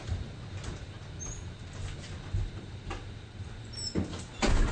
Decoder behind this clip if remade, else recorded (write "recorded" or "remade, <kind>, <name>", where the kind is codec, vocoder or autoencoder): recorded